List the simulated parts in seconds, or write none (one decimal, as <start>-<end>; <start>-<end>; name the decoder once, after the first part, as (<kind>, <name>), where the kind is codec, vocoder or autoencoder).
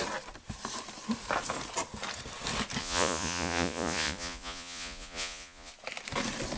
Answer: 2.8-5.7 (vocoder, Vocos)